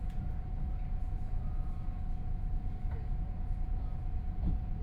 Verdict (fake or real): fake